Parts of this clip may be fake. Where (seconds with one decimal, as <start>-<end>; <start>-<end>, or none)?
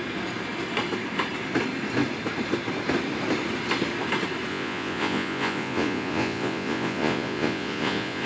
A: 4.5-8.3